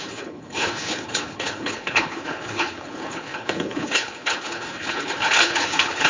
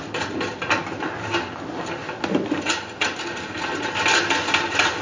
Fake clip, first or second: first